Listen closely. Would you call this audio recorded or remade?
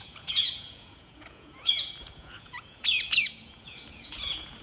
remade